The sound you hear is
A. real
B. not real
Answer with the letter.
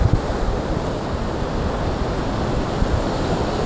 A